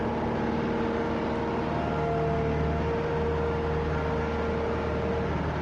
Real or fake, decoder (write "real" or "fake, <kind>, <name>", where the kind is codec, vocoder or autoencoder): real